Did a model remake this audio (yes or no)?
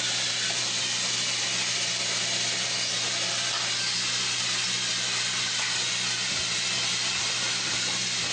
no